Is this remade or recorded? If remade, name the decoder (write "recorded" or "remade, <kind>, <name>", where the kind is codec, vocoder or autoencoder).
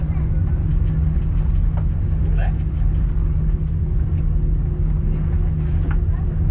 recorded